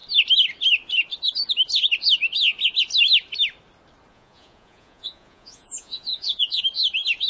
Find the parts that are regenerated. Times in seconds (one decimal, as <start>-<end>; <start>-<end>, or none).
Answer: 4.1-6.6